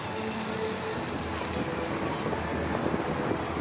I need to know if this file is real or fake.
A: real